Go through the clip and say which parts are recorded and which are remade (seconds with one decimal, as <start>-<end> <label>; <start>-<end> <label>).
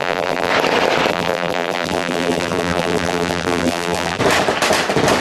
0.0-0.5 remade; 0.5-1.1 recorded; 1.1-4.2 remade; 4.2-5.2 recorded